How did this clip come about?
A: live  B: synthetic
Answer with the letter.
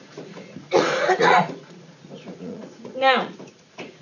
B